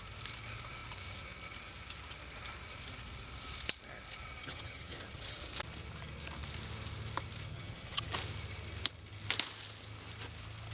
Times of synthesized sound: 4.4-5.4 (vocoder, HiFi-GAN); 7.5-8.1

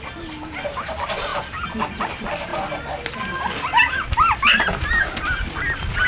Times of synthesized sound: none

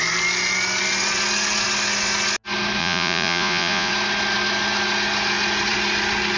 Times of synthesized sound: 2.8-3.9 (vocoder, Vocos)

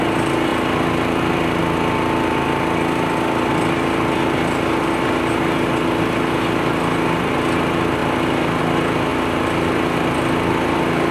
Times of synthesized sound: none